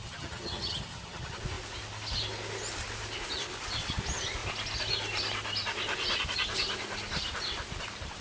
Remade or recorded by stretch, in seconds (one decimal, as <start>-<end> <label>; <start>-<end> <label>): 0.0-1.4 remade; 1.4-8.2 recorded